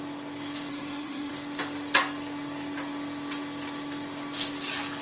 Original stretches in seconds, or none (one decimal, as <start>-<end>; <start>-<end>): 0.0-0.7; 1.3-5.0